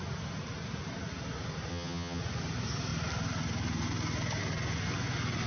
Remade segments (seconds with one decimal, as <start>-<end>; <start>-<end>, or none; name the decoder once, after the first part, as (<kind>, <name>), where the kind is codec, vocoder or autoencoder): 1.7-2.2 (vocoder, HiFi-GAN)